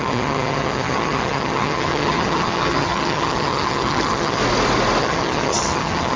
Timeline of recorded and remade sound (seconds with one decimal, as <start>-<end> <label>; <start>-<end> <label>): 0.0-4.4 remade; 4.4-5.0 recorded; 5.0-6.2 remade